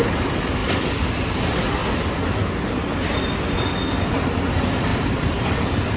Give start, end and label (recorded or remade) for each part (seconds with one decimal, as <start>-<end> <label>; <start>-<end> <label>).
0.0-0.6 recorded; 0.6-1.4 remade; 1.4-4.9 recorded; 4.9-6.0 remade